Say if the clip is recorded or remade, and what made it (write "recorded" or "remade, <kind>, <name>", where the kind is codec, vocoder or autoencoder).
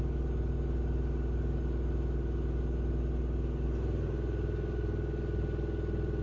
recorded